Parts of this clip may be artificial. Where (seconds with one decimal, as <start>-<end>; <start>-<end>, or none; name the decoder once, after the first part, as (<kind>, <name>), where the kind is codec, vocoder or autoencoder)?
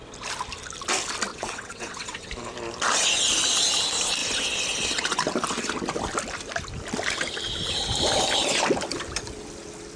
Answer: 1.3-2.3 (vocoder, WaveNeXt)